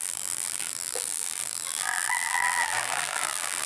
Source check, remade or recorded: remade